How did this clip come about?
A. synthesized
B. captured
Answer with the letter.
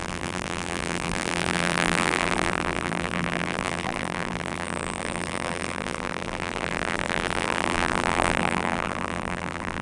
A